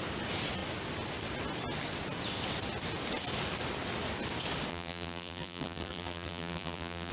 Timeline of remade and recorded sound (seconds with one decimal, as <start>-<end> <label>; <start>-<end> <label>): 0.0-4.7 recorded; 4.7-7.1 remade